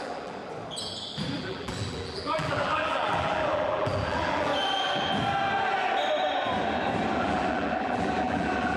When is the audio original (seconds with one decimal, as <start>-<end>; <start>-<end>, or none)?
0.4-1.4; 4.5-7.2